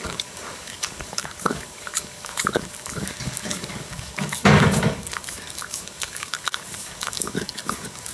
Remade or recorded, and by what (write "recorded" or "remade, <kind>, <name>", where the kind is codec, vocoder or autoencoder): remade, codec, DAC